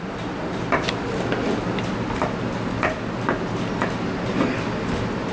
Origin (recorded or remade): recorded